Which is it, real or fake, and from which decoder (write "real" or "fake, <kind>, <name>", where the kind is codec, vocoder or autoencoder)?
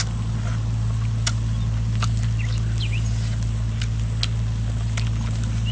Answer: real